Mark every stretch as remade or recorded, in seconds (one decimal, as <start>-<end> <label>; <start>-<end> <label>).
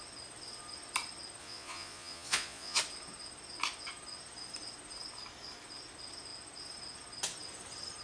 0.0-1.4 recorded; 1.4-2.8 remade; 2.8-8.0 recorded